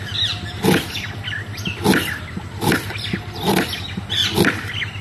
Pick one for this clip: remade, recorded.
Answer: recorded